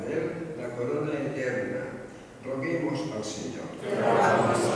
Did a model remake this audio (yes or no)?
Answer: no